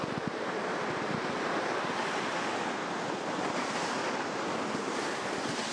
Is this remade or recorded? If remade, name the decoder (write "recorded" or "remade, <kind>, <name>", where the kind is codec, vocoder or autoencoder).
recorded